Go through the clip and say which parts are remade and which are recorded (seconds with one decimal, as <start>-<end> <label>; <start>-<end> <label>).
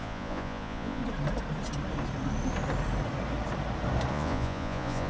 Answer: 0.0-1.0 remade; 1.0-4.1 recorded; 4.1-5.1 remade